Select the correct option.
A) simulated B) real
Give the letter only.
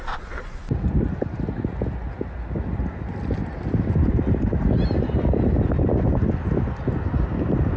B